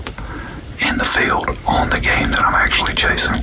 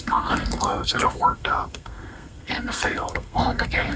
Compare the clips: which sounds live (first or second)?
first